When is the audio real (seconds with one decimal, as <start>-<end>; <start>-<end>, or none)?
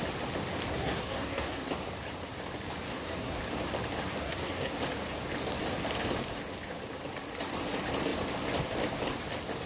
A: 0.0-0.7; 1.7-2.9; 3.4-4.2; 4.7-9.7